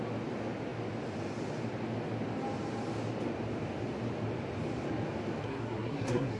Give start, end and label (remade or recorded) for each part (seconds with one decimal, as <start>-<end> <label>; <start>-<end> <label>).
0.0-5.4 recorded; 5.4-6.4 remade